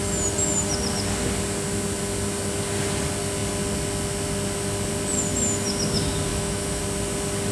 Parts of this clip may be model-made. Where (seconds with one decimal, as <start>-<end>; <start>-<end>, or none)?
6.3-6.8